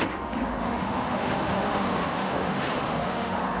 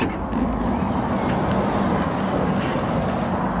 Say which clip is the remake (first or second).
first